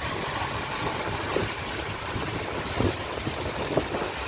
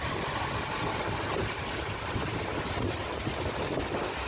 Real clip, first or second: second